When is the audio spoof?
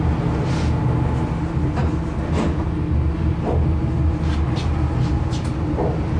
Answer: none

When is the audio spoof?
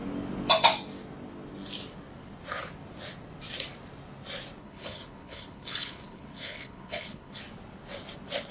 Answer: 4.6-7.4 (codec, HILCodec)